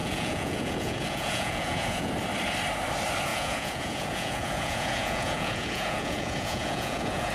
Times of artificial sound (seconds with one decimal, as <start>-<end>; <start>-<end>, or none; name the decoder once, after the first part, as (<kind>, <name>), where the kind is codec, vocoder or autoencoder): 0.0-2.1 (vocoder, Vocos); 3.3-7.3